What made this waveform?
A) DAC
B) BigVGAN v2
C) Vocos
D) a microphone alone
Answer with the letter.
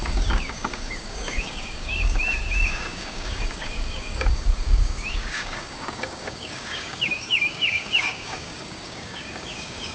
A